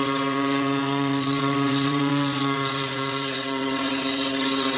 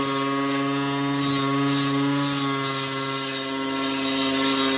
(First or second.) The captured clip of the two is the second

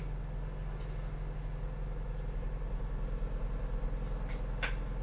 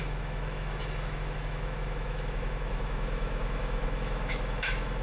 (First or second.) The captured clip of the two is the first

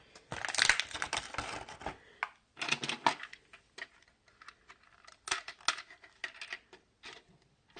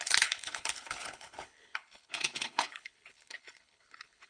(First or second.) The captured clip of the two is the first